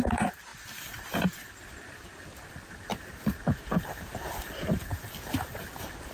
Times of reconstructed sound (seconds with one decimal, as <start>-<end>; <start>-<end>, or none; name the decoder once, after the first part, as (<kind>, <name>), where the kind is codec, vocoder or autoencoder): 0.0-0.5 (vocoder, BigVGAN v2); 1.7-2.9; 4.4-4.9